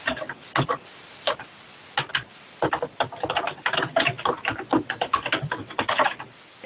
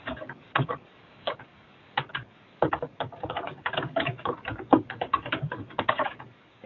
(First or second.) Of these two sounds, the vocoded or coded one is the second